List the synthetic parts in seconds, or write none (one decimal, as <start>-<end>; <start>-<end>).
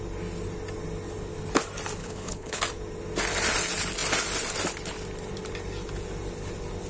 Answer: 2.0-2.6